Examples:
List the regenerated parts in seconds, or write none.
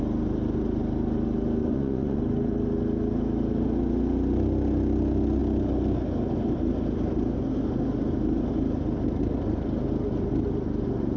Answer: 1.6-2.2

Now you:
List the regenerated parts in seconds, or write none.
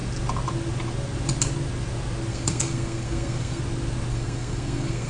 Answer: 2.3-3.6; 4.1-5.1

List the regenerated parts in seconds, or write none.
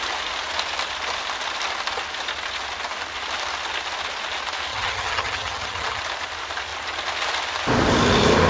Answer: 4.7-6.0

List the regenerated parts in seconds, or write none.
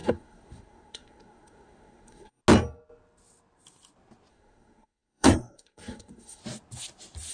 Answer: 0.0-2.4; 4.3-6.4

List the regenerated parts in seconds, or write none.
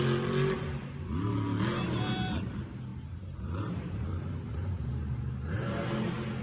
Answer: 2.9-4.9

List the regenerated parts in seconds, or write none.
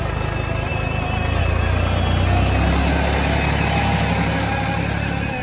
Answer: none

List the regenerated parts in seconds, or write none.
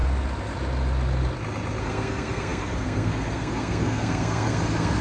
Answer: 1.8-5.0